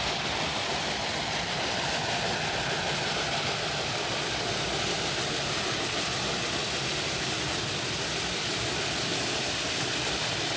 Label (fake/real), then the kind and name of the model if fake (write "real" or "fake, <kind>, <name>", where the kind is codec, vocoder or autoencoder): real